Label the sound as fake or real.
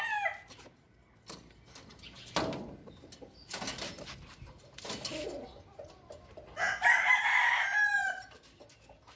real